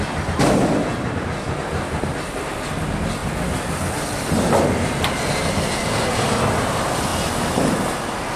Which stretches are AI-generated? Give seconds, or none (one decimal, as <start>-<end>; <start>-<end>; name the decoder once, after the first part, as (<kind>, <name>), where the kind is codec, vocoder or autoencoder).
none